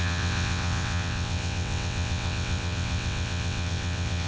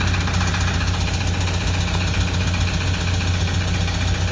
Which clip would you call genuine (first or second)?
second